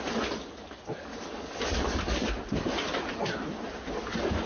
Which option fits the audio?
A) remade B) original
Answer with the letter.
A